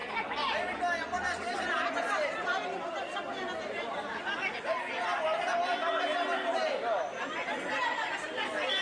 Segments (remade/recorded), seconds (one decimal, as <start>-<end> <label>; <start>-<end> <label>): 0.0-8.8 recorded